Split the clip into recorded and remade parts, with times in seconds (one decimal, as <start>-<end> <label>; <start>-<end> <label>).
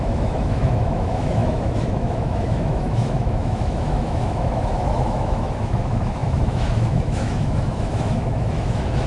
0.0-9.1 remade